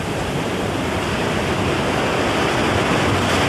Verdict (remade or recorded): recorded